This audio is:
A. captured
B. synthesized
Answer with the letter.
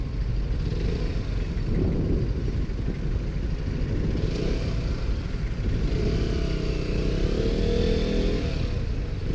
A